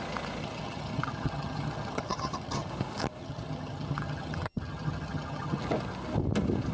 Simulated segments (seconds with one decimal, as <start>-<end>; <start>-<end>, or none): 0.4-2.7; 3.2-5.6